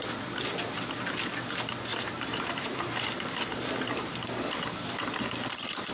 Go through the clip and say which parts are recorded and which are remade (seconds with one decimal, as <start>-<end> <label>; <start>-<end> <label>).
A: 0.0-1.9 recorded; 1.9-3.7 remade; 3.7-5.9 recorded